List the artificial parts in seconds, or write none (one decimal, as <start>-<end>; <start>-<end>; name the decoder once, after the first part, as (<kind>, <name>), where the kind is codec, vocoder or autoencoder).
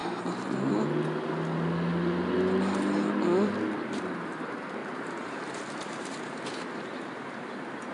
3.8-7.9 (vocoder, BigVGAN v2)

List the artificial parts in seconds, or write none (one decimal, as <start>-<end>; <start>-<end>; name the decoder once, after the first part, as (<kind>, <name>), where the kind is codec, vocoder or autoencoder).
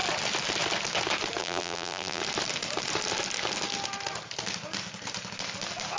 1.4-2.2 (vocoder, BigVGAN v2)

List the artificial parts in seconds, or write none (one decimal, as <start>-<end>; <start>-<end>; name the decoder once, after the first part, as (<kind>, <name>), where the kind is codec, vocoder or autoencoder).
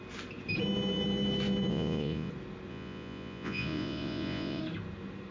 1.7-2.3 (vocoder, Vocos); 2.7-4.6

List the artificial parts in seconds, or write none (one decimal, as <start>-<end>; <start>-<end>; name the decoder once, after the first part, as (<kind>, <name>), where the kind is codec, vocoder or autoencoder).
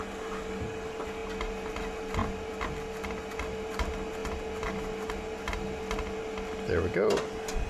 none